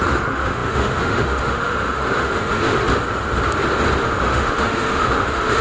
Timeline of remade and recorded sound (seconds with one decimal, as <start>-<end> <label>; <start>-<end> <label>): 0.0-2.8 remade; 2.8-4.0 recorded; 4.0-5.6 remade